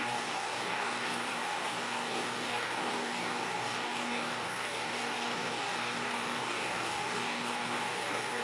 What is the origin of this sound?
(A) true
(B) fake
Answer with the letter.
B